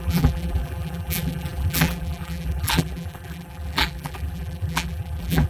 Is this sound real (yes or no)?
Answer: no